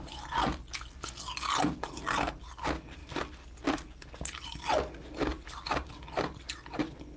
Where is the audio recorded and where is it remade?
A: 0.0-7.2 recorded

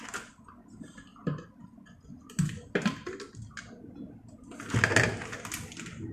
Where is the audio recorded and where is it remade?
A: 0.0-6.1 recorded

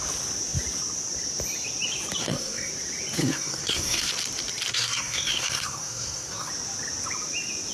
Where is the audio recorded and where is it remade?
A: 0.0-2.2 recorded; 2.2-2.7 remade; 2.7-3.2 recorded; 3.2-4.1 remade; 4.1-4.7 recorded; 4.7-6.5 remade; 6.5-7.7 recorded